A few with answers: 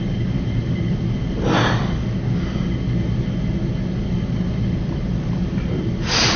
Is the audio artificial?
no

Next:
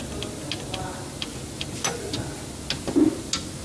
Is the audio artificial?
no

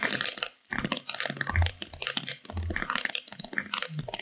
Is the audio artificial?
no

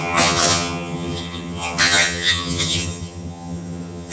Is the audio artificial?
yes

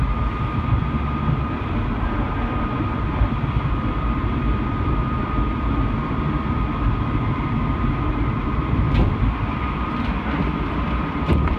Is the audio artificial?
yes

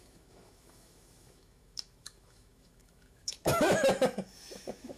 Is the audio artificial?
yes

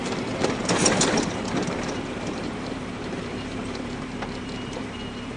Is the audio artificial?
yes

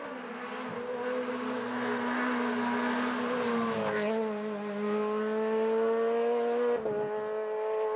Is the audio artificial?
no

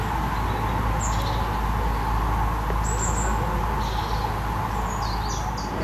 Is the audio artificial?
no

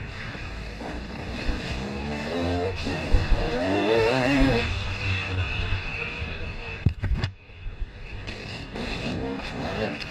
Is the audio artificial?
yes